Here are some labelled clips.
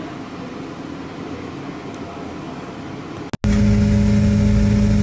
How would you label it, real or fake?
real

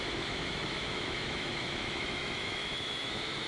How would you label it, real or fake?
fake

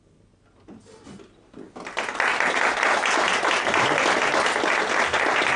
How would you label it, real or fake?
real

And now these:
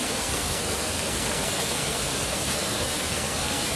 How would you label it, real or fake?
fake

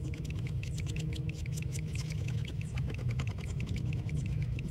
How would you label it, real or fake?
fake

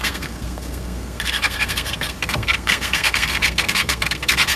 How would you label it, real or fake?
fake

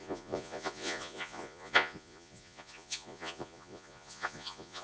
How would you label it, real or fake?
fake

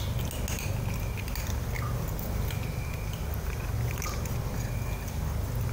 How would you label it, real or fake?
real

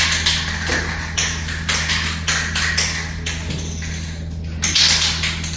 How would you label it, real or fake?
real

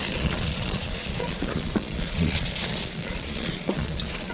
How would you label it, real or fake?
fake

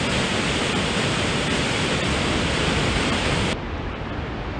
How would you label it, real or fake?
real